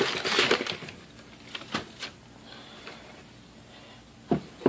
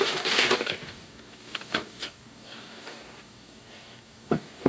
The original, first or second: first